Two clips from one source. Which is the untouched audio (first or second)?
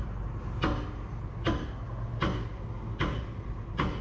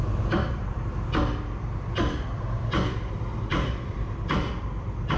first